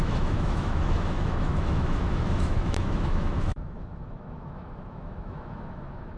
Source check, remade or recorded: remade